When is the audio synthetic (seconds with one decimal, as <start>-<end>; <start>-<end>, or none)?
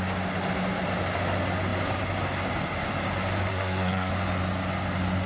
3.5-4.1